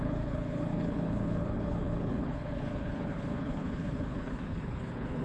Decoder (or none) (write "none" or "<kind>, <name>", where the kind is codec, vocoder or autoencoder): codec, HILCodec